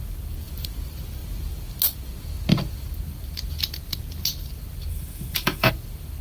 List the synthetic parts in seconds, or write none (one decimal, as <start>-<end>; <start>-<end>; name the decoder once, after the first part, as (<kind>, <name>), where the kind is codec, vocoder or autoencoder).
4.9-5.7 (autoencoder, DAC-VAE)

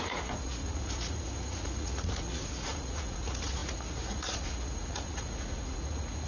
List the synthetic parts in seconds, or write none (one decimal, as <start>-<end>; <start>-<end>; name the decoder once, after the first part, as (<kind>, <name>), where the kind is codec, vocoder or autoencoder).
0.0-6.3 (vocoder, Vocos)

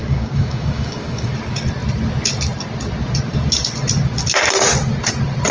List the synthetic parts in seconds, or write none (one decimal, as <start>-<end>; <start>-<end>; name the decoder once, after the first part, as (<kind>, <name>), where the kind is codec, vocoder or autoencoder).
0.0-1.3 (codec, DAC)